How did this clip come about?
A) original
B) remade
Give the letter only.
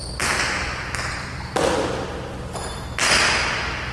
A